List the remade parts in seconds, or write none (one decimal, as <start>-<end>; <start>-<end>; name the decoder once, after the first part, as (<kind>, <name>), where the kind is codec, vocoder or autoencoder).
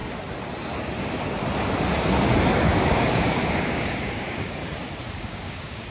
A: 2.5-4.6 (codec, DAC); 5.1-5.9